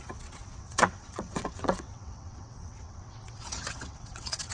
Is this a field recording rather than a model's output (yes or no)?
no